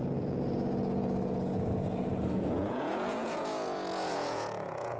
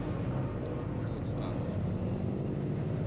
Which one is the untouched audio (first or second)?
second